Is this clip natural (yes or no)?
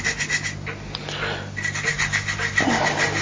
yes